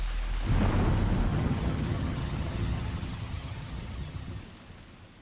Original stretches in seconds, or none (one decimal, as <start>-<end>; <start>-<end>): 0.0-1.3; 4.4-5.2